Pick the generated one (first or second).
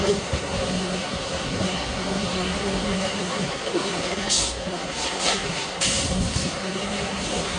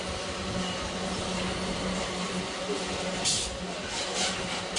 first